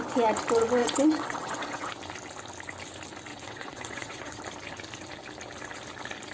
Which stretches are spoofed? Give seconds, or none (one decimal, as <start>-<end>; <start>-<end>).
0.8-1.9; 3.3-4.4